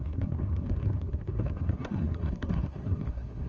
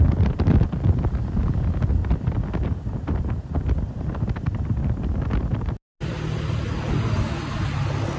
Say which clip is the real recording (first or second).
second